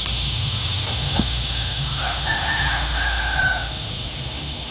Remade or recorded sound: remade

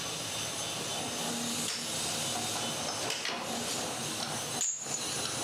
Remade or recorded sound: recorded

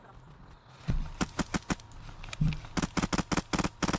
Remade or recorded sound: recorded